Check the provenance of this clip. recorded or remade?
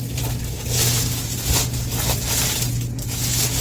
recorded